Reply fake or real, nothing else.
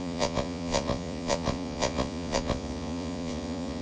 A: fake